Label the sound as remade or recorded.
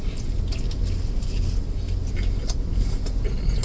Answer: recorded